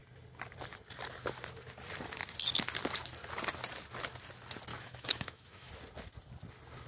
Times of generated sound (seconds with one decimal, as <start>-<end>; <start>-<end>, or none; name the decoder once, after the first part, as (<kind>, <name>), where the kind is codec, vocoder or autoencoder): 4.7-5.7 (autoencoder, DAC-VAE)